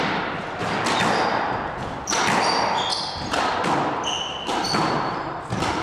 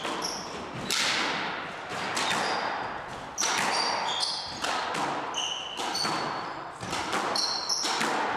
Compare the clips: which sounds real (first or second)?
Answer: second